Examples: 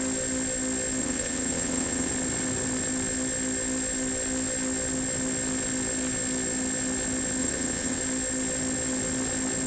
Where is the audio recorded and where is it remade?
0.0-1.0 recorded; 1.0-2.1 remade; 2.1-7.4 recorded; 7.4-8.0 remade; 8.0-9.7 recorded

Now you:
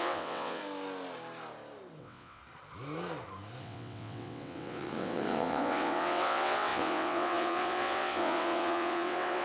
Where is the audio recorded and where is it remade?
0.0-0.6 remade; 0.6-2.0 recorded; 2.0-2.4 remade; 2.4-3.6 recorded; 3.6-9.4 remade

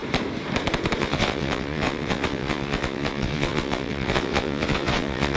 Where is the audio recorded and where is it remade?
0.0-1.0 recorded; 1.0-5.4 remade

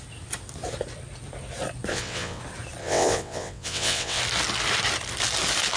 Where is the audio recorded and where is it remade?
0.0-1.9 recorded; 1.9-2.4 remade; 2.4-2.8 recorded; 2.8-4.2 remade; 4.2-5.8 recorded

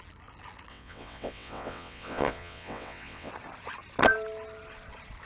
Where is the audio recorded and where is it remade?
0.0-0.7 recorded; 0.7-3.3 remade; 3.3-5.3 recorded

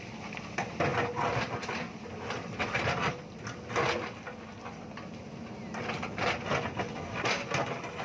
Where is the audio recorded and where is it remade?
0.0-8.0 recorded